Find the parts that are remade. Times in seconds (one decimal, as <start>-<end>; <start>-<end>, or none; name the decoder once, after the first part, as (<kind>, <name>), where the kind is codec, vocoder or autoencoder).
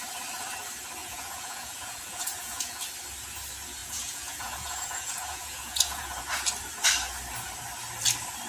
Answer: 1.0-2.8 (vocoder, Vocos); 3.8-6.2